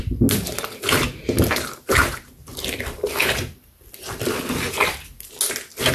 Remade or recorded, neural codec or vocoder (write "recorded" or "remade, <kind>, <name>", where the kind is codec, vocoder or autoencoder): recorded